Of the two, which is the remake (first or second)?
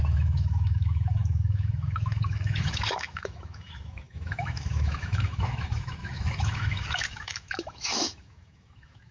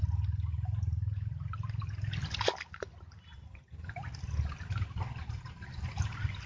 first